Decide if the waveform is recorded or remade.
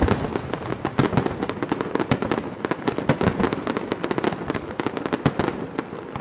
recorded